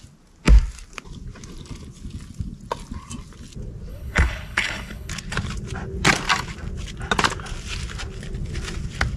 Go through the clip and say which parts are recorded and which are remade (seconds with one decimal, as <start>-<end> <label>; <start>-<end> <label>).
0.0-3.9 recorded; 3.9-5.1 remade; 5.1-9.2 recorded